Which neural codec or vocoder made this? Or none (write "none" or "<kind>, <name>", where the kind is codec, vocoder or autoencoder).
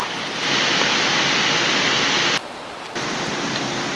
none